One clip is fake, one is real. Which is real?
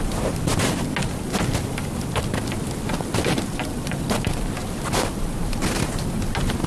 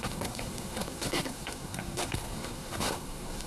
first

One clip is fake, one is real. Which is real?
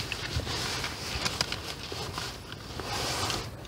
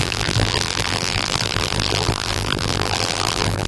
first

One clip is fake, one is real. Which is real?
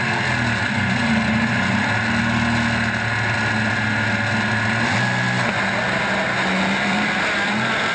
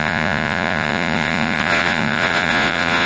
first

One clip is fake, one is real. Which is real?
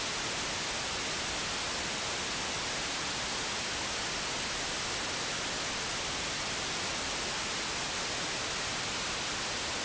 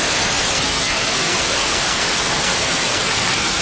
first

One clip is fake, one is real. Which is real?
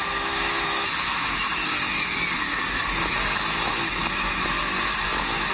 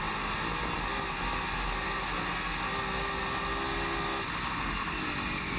second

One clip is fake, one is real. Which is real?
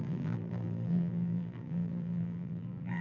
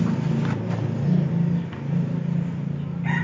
second